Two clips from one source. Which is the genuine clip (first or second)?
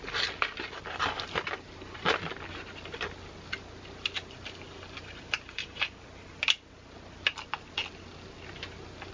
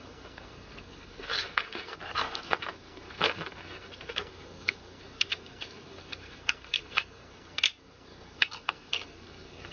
first